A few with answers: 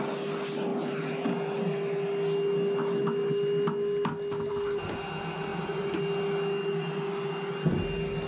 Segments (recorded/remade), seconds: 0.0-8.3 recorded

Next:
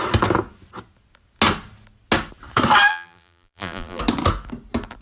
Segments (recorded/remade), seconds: 0.0-2.9 recorded; 2.9-4.0 remade; 4.0-5.0 recorded

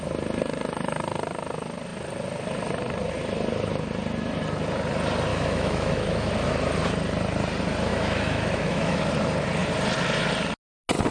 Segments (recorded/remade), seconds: 0.0-5.3 recorded; 5.3-6.3 remade; 6.3-7.9 recorded; 7.9-9.0 remade; 9.0-11.1 recorded

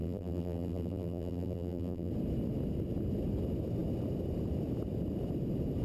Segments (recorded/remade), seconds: 0.0-2.1 remade; 2.1-5.8 recorded

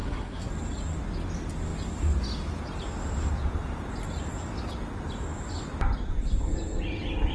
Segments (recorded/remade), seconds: 0.0-0.5 remade; 0.5-7.3 recorded

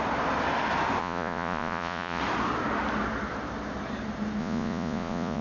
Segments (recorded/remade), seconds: 0.0-1.0 recorded; 1.0-2.2 remade; 2.2-4.4 recorded; 4.4-5.4 remade